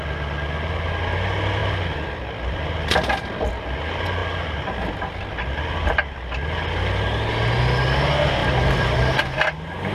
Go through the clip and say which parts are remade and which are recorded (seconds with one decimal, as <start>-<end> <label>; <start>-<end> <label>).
0.0-1.6 recorded; 1.6-3.5 remade; 3.5-8.4 recorded; 8.4-9.5 remade; 9.5-9.9 recorded